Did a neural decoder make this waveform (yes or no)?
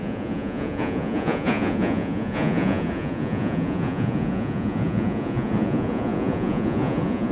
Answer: yes